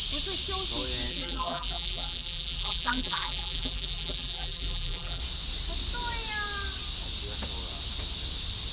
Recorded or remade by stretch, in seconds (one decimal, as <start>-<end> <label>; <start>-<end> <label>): 0.0-1.1 recorded; 1.1-5.2 remade; 5.2-8.7 recorded